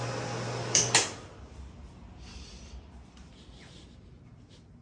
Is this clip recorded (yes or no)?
yes